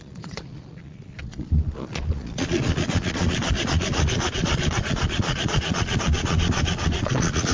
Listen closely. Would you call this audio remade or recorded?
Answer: remade